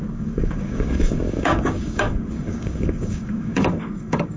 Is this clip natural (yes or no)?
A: no